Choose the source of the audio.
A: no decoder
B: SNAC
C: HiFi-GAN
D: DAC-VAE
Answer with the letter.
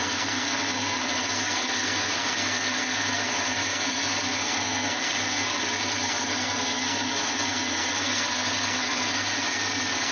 B